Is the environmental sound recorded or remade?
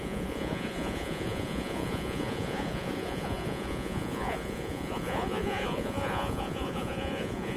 remade